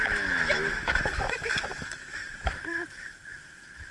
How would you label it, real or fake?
fake